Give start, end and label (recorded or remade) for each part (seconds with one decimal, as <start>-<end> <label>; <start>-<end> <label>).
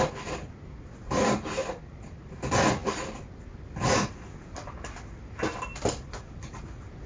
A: 0.0-2.8 recorded; 2.8-3.4 remade; 3.4-7.1 recorded